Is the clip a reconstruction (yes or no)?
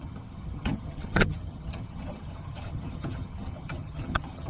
yes